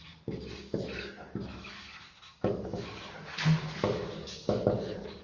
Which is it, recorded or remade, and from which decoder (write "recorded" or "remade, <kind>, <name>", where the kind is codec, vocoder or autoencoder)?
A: remade, codec, DAC